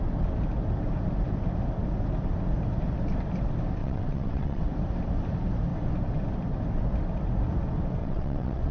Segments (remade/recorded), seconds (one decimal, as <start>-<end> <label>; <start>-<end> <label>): 0.0-3.8 recorded; 3.8-4.7 remade; 4.7-8.0 recorded; 8.0-8.7 remade

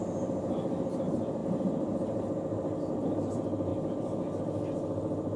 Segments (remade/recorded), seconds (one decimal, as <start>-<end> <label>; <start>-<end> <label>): 0.0-5.4 recorded

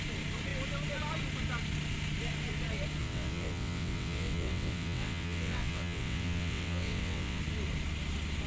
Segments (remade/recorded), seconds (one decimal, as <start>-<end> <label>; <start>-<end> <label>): 0.0-3.0 recorded; 3.0-7.4 remade; 7.4-8.5 recorded

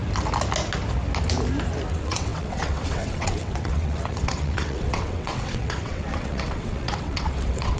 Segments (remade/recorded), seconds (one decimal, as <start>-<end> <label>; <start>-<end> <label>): 0.0-1.9 recorded; 1.9-7.8 remade

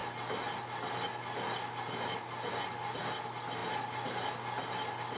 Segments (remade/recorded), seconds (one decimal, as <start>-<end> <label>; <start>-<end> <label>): 0.0-5.2 recorded